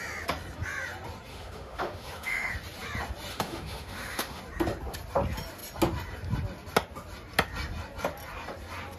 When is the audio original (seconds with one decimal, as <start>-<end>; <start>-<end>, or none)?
0.0-1.3; 2.5-3.3; 4.4-9.0